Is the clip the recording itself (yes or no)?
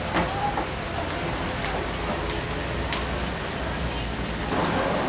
yes